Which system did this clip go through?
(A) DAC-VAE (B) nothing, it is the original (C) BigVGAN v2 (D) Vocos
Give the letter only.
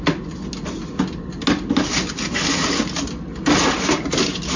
B